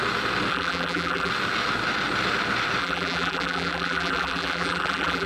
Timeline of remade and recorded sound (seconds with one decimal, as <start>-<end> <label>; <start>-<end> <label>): 0.0-0.5 recorded; 0.5-1.3 remade; 1.3-2.8 recorded; 2.8-5.3 remade